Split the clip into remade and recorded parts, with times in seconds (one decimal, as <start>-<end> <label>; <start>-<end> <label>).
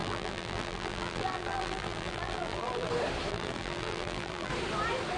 0.0-2.9 remade; 2.9-3.3 recorded; 3.3-4.5 remade; 4.5-5.2 recorded